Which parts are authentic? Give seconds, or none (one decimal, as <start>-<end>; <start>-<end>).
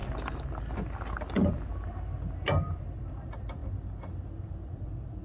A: 0.0-5.2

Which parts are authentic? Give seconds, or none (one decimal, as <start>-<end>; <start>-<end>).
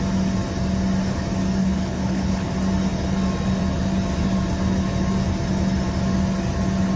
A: 0.0-1.6; 2.5-7.0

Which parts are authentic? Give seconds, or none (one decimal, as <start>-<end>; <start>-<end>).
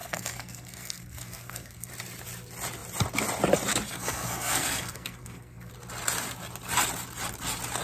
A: 1.9-3.9; 5.7-7.8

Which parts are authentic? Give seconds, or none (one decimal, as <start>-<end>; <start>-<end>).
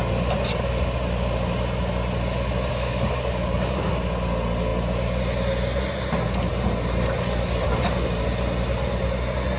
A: 0.0-2.7; 3.9-9.6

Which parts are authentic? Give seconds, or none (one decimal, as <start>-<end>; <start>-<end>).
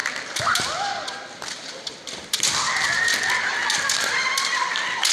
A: none